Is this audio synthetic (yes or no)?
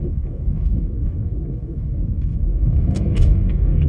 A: yes